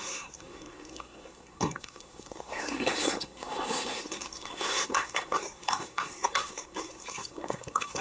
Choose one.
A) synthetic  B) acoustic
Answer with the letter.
A